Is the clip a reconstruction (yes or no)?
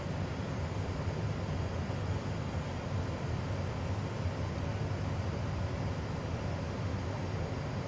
no